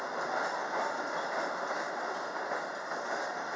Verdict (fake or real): real